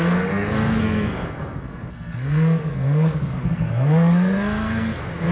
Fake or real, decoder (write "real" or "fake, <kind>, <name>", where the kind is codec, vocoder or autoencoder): fake, codec, SNAC